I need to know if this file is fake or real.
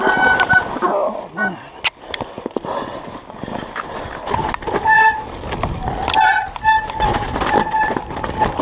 real